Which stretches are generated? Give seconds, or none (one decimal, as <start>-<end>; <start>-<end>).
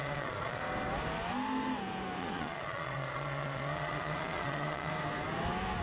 0.0-0.6; 2.2-4.9